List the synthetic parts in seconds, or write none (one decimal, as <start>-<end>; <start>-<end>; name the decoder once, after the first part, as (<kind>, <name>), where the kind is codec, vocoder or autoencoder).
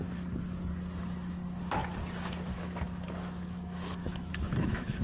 4.0-5.0 (autoencoder, DAC-VAE)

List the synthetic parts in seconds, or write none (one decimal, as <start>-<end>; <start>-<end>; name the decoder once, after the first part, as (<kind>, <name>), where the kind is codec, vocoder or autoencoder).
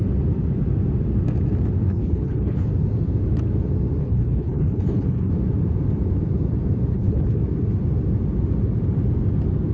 1.9-2.7 (codec, HILCodec); 4.0-5.3; 6.9-7.4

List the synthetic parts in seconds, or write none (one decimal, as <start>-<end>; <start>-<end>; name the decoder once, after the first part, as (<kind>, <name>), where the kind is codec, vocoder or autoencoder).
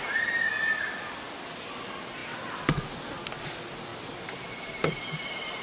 none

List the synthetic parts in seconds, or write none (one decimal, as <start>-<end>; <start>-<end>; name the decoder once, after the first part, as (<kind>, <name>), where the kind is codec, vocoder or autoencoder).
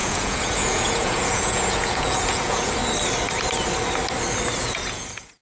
0.0-2.8 (vocoder, Vocos); 4.6-5.4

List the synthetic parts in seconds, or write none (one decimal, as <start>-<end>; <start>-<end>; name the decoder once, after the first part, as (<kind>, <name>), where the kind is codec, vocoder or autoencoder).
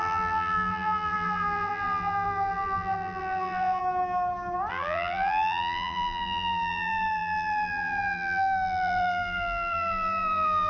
0.0-3.8 (vocoder, BigVGAN v2); 4.7-10.7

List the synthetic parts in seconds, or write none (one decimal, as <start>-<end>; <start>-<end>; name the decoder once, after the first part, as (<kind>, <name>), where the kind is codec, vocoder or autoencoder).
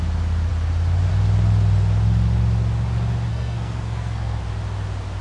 3.3-4.4 (codec, SNAC)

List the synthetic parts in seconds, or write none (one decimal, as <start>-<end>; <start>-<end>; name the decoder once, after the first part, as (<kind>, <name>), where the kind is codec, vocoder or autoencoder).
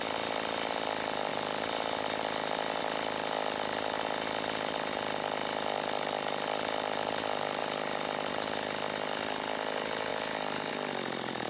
5.4-7.1 (vocoder, BigVGAN v2); 7.6-8.3; 10.1-10.7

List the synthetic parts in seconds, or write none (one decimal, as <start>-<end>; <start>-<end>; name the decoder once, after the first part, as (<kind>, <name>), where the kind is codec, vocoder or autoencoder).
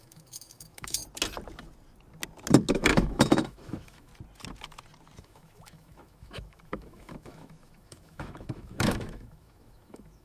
0.0-1.0 (autoencoder, DAC-VAE); 2.7-4.1; 5.2-10.2